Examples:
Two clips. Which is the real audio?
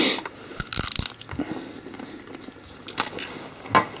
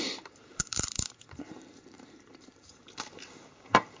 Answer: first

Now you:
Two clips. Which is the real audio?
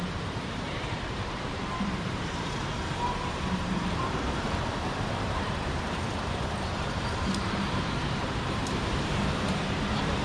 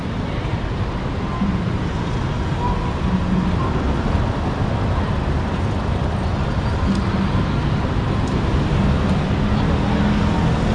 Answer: second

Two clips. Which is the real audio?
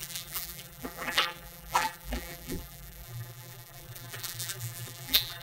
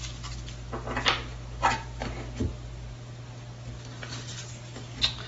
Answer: second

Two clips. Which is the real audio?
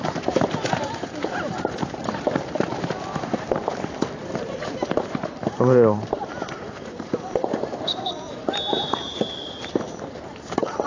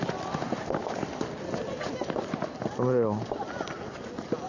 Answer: second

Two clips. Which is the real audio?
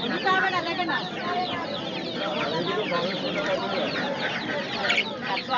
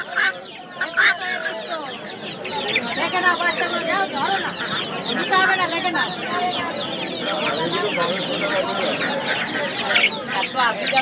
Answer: second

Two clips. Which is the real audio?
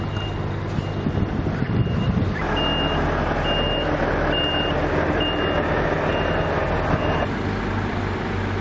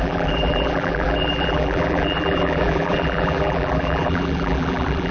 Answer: first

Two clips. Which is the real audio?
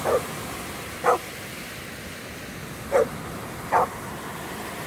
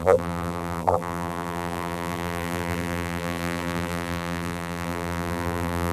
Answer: first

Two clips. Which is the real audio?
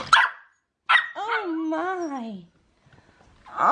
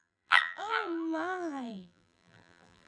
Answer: first